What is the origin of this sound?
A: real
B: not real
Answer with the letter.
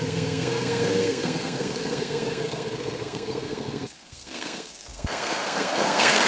B